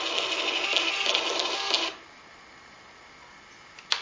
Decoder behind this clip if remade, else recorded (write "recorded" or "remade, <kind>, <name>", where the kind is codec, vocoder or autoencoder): recorded